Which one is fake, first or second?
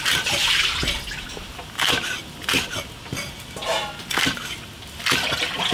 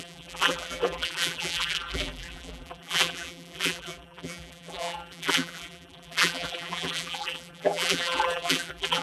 second